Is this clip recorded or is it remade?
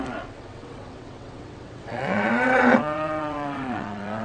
remade